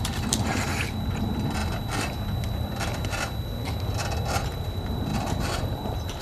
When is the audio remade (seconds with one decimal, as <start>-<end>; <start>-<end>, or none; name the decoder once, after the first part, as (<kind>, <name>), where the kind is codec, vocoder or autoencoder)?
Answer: 0.0-1.6 (vocoder, BigVGAN v2); 4.3-6.2